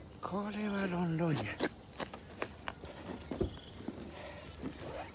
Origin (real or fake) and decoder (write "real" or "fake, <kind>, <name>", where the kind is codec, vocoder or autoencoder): real